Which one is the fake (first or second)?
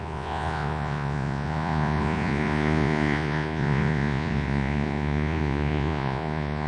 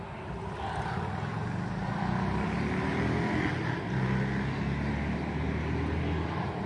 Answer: first